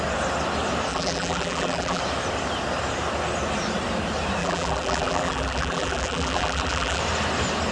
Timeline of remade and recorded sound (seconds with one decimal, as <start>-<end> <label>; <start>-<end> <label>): 0.0-0.9 recorded; 0.9-2.0 remade; 2.0-4.4 recorded; 4.4-7.0 remade; 7.0-7.7 recorded